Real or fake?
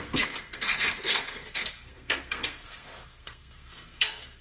fake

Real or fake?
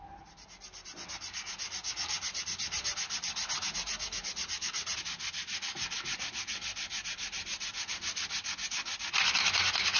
real